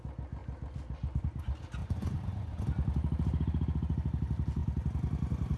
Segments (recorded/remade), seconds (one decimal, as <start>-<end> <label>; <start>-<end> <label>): 0.0-1.8 recorded; 1.8-2.6 remade; 2.6-5.6 recorded